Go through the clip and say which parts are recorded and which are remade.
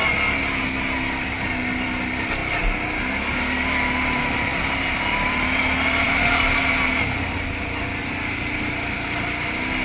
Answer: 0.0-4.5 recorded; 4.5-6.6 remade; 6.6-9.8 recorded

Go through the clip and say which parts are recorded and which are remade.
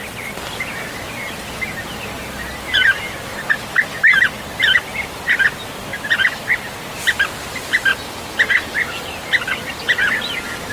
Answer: 0.0-10.7 recorded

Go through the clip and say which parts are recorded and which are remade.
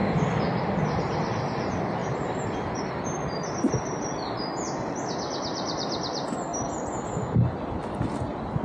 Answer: 0.0-2.0 recorded; 2.0-2.9 remade; 2.9-8.6 recorded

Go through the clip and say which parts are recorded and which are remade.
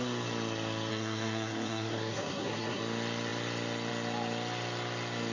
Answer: 0.0-0.9 recorded; 0.9-2.8 remade; 2.8-5.3 recorded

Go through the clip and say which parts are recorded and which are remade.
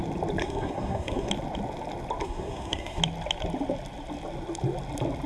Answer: 0.0-0.4 recorded; 0.4-1.3 remade; 1.3-2.2 recorded; 2.2-3.0 remade; 3.0-5.3 recorded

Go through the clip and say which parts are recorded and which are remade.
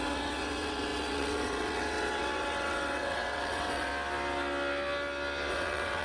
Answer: 0.0-3.9 remade; 3.9-5.5 recorded; 5.5-6.0 remade